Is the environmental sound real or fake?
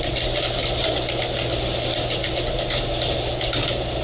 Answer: real